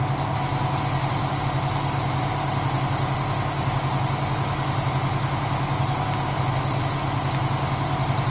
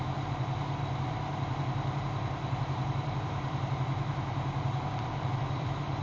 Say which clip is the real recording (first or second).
first